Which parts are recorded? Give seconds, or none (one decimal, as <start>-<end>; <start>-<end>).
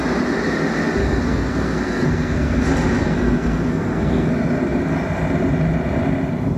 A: 0.0-1.0; 2.6-3.0; 4.3-6.6